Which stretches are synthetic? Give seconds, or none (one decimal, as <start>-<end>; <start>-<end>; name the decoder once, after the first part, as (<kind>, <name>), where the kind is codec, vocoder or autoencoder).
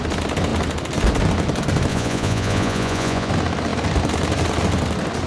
1.9-3.3 (vocoder, Vocos)